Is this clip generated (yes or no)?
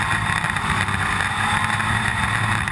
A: yes